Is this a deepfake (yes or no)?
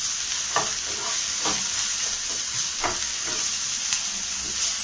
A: no